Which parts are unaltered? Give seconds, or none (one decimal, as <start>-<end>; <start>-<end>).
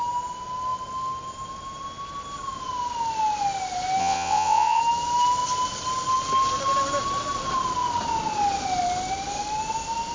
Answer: 0.0-4.0; 4.8-10.1